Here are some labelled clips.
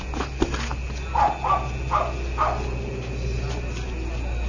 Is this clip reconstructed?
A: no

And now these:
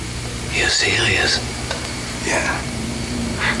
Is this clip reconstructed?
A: yes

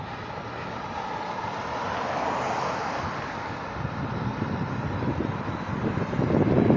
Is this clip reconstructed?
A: no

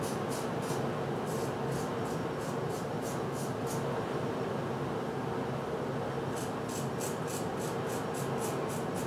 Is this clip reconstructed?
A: no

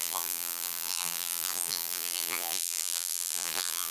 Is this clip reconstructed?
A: yes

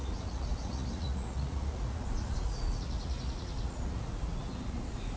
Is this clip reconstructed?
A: yes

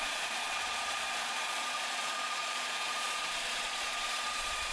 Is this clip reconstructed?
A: yes